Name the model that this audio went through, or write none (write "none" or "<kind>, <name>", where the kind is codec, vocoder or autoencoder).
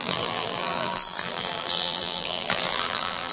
vocoder, BigVGAN v2